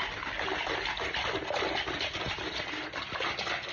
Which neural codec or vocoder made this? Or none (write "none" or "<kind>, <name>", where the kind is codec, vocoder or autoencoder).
none